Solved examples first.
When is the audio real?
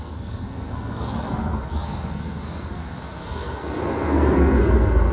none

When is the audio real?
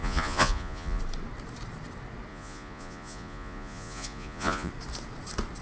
1.0-2.3; 4.7-5.6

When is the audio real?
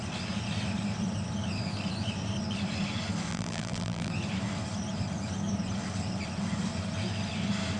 0.0-3.3; 4.1-7.8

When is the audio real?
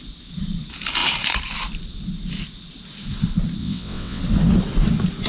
0.0-3.6; 4.2-5.3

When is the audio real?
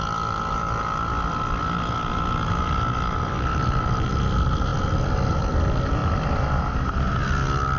0.0-6.0; 6.6-7.8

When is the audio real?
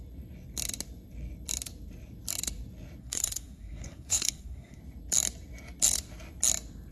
0.0-3.0; 4.8-6.9